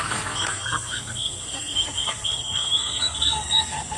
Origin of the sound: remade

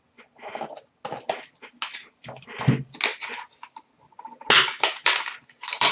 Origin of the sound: recorded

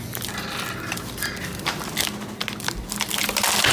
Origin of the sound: recorded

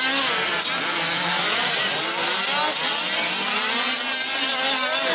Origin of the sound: recorded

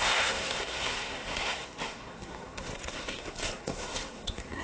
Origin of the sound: remade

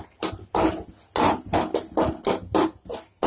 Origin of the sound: recorded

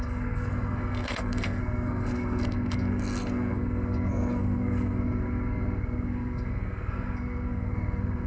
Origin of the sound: remade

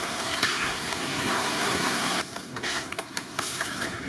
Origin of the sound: remade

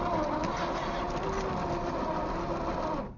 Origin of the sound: recorded